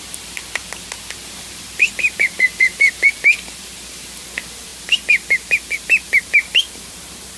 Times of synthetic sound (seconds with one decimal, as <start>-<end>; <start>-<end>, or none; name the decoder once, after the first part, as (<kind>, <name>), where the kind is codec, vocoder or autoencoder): 0.0-0.6 (vocoder, BigVGAN v2); 1.4-4.7; 6.7-7.4